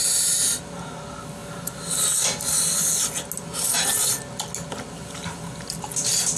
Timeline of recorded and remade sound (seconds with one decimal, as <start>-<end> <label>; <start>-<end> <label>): 0.0-6.4 recorded